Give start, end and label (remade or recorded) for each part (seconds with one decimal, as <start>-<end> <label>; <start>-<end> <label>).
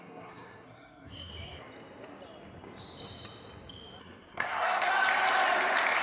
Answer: 0.0-1.3 remade; 1.3-4.0 recorded; 4.0-4.9 remade; 4.9-6.0 recorded